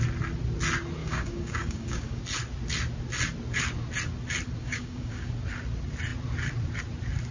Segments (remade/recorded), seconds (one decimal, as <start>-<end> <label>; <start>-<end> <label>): 0.0-1.0 recorded; 1.0-2.2 remade; 2.2-4.6 recorded; 4.6-5.3 remade; 5.3-7.3 recorded